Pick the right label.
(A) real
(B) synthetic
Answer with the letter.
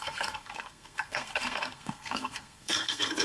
B